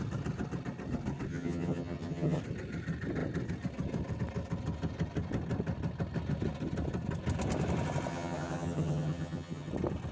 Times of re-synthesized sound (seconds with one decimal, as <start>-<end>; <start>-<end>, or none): 1.3-2.4; 8.1-9.7